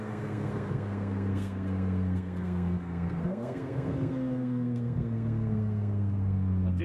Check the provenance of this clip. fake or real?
fake